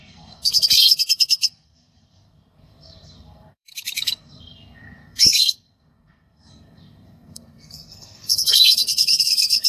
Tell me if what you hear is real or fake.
fake